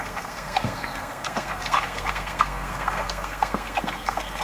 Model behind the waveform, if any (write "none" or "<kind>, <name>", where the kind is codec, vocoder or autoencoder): codec, SNAC